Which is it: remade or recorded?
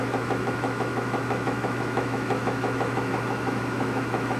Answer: remade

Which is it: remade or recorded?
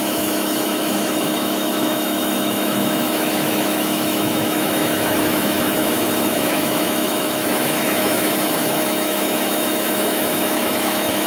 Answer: remade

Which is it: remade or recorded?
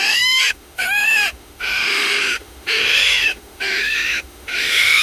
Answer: remade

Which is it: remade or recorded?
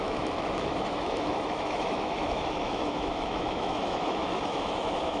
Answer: remade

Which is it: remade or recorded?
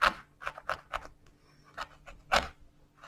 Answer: recorded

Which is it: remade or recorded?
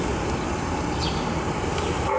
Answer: recorded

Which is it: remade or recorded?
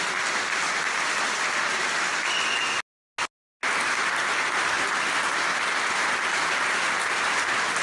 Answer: recorded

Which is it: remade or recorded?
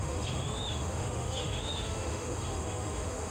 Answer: remade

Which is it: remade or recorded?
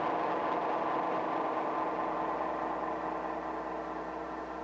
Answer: recorded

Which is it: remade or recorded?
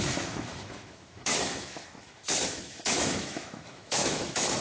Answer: remade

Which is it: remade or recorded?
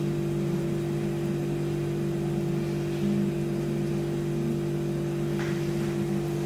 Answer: recorded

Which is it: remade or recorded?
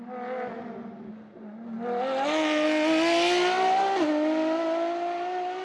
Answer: recorded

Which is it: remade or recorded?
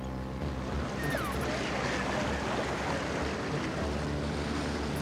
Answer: recorded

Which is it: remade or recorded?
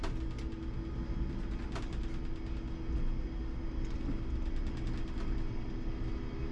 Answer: recorded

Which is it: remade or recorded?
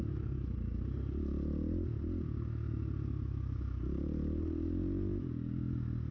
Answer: recorded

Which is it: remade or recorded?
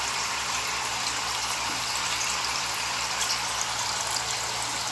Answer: recorded